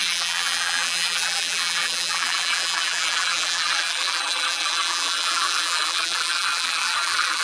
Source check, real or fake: fake